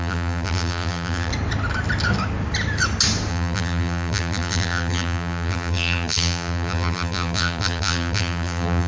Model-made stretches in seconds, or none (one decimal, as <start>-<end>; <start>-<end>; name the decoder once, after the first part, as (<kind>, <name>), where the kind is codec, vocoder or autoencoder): 0.0-1.3 (vocoder, BigVGAN v2); 3.3-8.9

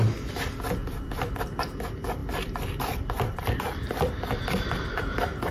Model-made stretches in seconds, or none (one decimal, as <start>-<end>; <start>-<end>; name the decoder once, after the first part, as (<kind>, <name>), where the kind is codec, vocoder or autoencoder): 0.8-1.4 (vocoder, BigVGAN v2); 2.2-5.5

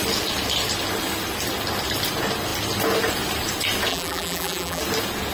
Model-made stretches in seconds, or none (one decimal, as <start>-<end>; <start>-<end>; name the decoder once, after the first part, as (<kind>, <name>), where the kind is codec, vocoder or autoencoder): 3.9-4.8 (vocoder, BigVGAN v2)